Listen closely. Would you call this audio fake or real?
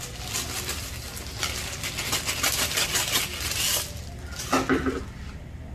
real